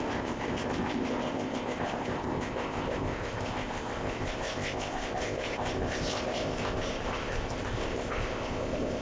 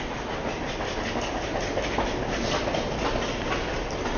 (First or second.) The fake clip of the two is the first